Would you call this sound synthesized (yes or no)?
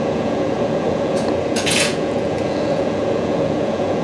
yes